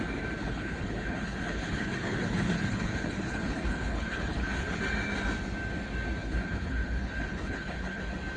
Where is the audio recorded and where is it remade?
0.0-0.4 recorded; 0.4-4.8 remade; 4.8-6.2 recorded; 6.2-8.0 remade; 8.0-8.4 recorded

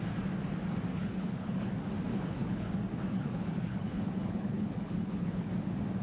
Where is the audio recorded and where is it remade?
0.0-0.9 recorded; 0.9-1.7 remade; 1.7-2.1 recorded; 2.1-2.7 remade; 2.7-3.1 recorded; 3.1-5.5 remade; 5.5-6.0 recorded

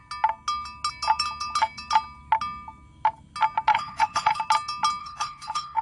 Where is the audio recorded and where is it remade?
0.0-3.7 recorded; 3.7-4.4 remade; 4.4-5.0 recorded; 5.0-5.8 remade